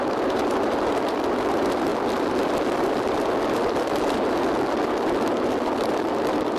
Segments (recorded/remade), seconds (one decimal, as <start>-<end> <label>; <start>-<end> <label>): 0.0-6.6 recorded

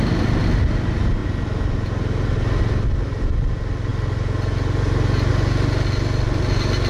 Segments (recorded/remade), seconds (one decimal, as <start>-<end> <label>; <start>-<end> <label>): 0.0-6.9 recorded

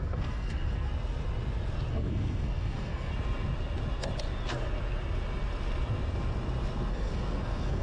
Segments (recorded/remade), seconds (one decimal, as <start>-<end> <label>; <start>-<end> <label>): 0.0-0.9 remade; 0.9-1.9 recorded; 1.9-3.1 remade; 3.1-6.9 recorded; 6.9-7.8 remade

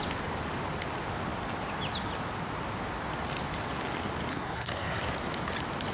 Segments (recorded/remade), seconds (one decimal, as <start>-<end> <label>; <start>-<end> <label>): 0.0-4.3 recorded; 4.3-5.1 remade; 5.1-5.9 recorded